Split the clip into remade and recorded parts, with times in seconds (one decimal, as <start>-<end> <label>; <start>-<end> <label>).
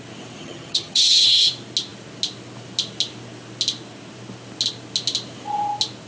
0.0-0.4 recorded; 0.4-1.5 remade; 1.5-6.1 recorded